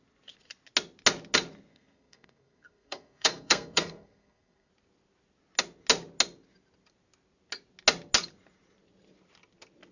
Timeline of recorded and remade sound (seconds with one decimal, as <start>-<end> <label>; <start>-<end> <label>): 0.0-1.7 recorded; 1.7-4.7 remade; 4.7-9.9 recorded